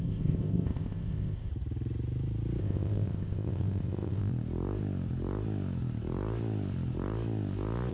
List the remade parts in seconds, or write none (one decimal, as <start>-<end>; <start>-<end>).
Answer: 0.0-1.5; 2.6-4.3

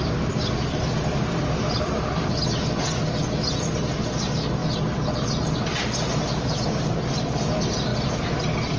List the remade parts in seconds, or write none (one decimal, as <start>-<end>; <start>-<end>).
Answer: none

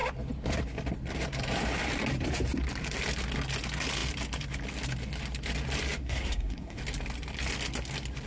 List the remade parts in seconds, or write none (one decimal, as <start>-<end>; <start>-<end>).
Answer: 6.0-6.8

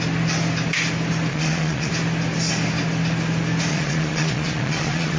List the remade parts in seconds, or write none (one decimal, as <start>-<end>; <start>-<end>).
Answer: 1.3-1.9; 3.7-5.2

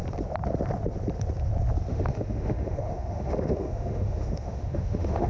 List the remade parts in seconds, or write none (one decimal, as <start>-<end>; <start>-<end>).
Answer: 1.9-5.3

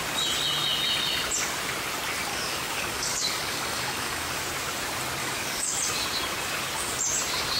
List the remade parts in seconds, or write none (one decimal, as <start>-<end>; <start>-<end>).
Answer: 2.3-4.4; 5.2-5.8

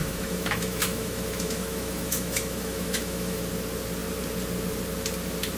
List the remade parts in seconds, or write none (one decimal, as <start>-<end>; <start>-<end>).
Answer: 0.0-3.4

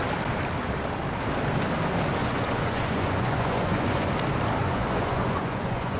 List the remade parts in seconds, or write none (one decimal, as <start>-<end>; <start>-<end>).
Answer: 2.2-4.1; 4.6-6.0